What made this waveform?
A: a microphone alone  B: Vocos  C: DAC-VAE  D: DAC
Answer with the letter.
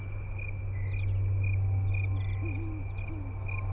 A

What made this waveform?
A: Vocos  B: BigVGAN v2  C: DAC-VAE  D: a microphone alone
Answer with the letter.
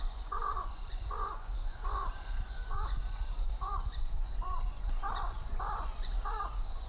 A